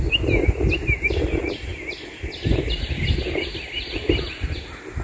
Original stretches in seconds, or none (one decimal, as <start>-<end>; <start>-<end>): 0.0-5.0

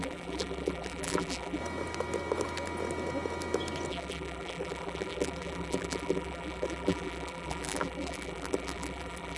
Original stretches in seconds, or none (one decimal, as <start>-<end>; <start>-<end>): 1.6-3.9

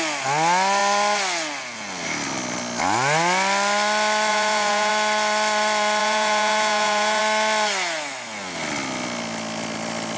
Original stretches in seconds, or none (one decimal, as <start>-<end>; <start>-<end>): 0.0-4.3; 4.9-6.0; 7.2-10.2

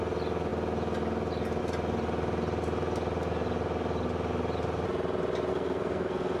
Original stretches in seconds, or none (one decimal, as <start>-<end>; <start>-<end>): 0.0-5.5

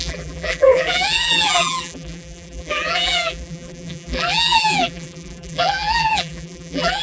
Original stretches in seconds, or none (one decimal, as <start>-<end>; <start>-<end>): none